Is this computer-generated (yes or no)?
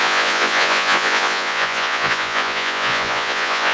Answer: yes